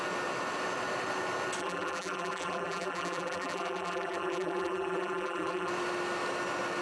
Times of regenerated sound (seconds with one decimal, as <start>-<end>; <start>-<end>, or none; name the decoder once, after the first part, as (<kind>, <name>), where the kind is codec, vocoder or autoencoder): 1.6-5.7 (vocoder, BigVGAN v2)